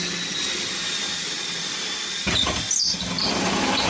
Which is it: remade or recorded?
recorded